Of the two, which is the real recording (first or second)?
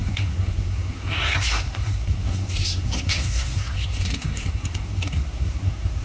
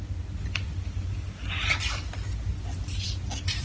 second